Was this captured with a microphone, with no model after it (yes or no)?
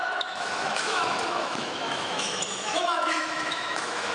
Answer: no